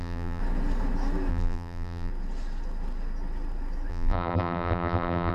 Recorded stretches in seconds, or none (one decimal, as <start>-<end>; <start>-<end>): 0.4-1.3; 2.1-3.9

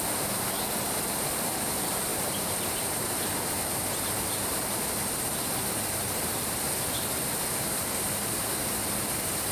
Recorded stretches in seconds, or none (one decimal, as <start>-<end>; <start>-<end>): none